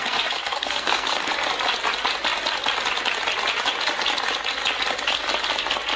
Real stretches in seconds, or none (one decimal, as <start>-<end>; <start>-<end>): 1.3-6.0